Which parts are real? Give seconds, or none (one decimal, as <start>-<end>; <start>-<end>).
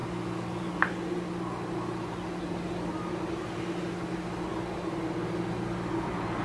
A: 0.0-6.4